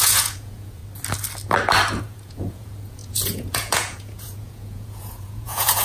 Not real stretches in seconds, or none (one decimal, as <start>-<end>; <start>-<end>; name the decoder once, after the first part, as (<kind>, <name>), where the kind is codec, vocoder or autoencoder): 0.0-0.8 (vocoder, Vocos); 2.0-5.8